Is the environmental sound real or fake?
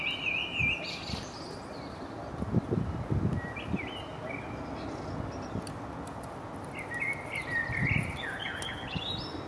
real